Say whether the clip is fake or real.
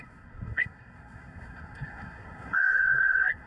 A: fake